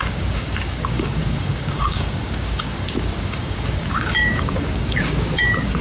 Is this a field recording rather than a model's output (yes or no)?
no